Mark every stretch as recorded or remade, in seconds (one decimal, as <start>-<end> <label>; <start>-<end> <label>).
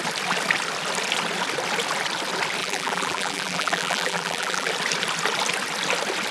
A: 0.0-2.6 recorded; 2.6-4.7 remade; 4.7-6.3 recorded